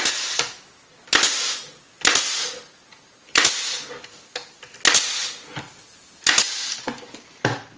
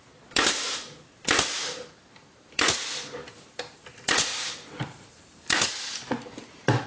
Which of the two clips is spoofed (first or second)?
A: second